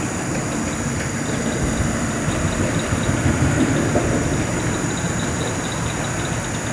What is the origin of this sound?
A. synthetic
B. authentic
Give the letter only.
B